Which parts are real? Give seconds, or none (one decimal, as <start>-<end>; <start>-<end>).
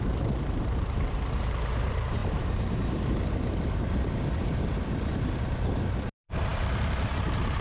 none